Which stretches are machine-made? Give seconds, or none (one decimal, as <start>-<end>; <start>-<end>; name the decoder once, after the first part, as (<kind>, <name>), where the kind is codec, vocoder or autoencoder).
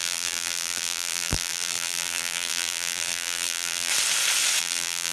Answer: 0.0-3.9 (vocoder, BigVGAN v2); 4.6-5.1